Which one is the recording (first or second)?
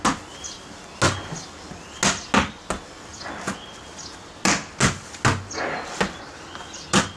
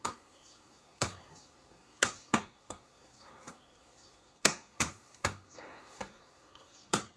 first